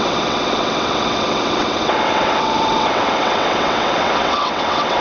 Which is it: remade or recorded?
remade